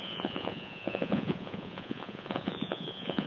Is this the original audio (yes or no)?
no